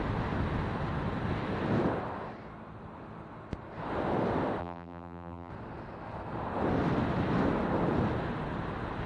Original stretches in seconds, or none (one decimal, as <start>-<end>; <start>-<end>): 0.0-4.6; 5.5-9.1

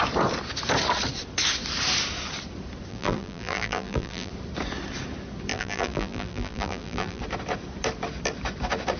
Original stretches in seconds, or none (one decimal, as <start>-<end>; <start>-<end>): 0.0-2.9; 4.3-5.5; 7.2-9.0

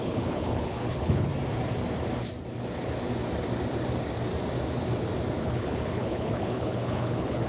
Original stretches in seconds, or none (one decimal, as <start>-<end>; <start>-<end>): 1.3-5.4

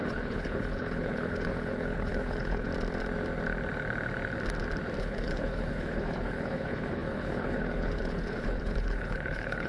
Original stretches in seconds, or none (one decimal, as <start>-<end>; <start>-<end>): 2.7-5.0

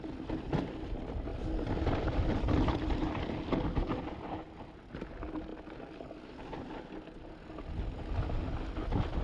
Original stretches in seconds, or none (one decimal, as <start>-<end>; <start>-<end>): 0.0-1.3; 3.1-9.2

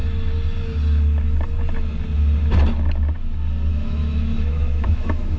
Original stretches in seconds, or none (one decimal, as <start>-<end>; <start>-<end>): 0.0-3.7